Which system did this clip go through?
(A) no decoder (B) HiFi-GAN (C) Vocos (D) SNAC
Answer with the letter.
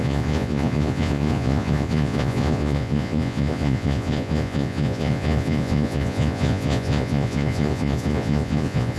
C